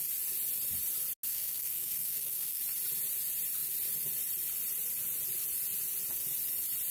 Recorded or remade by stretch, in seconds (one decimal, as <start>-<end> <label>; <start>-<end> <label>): 0.0-1.3 recorded; 1.3-2.6 remade; 2.6-6.9 recorded